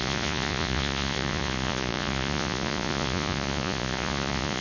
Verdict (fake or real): fake